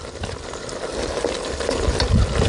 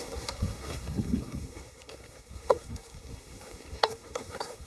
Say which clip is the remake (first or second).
second